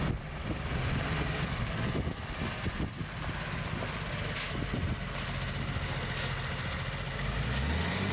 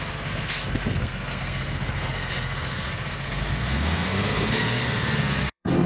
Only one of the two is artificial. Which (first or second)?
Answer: second